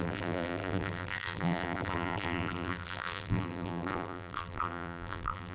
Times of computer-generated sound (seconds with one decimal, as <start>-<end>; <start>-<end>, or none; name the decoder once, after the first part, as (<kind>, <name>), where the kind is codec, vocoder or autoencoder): 0.0-5.5 (vocoder, BigVGAN v2)